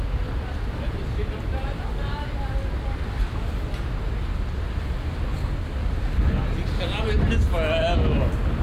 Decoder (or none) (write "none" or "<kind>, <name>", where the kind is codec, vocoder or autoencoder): none